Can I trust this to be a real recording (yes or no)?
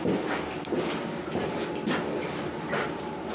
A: yes